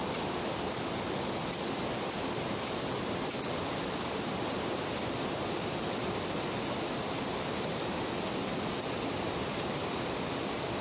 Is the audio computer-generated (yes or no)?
no